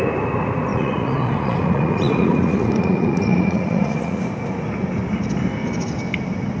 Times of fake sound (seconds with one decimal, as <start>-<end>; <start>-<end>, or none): 0.7-4.2

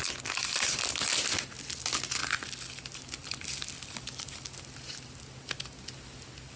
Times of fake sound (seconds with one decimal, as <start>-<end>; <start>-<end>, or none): 2.2-2.8; 3.2-4.4

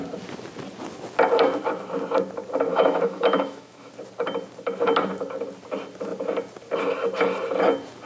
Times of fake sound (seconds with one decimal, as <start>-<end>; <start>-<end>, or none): 2.7-3.9

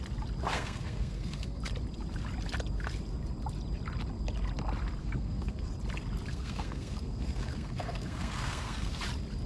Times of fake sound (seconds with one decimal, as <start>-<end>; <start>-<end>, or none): 0.5-1.6; 5.0-5.7; 6.3-9.0

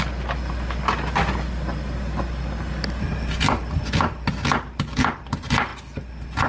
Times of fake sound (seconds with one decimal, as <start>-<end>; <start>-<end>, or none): none

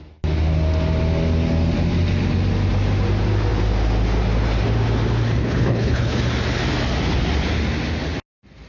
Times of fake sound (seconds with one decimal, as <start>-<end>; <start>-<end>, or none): 5.4-6.2